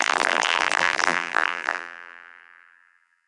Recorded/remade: remade